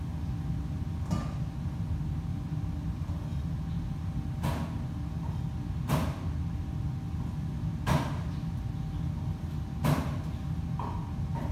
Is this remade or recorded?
recorded